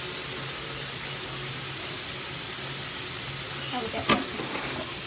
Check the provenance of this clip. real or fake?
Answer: real